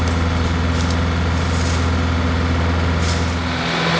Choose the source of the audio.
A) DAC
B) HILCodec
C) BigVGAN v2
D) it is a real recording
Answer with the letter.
D